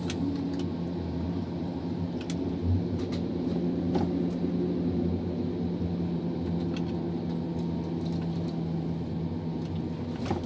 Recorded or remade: recorded